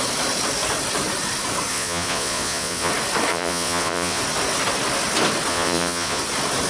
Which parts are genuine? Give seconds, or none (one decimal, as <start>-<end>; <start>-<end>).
0.0-1.7; 2.9-3.3; 4.2-5.5; 6.2-6.7